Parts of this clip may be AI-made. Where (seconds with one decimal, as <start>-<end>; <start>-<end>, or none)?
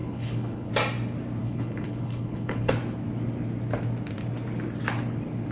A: 0.0-0.7; 1.4-2.7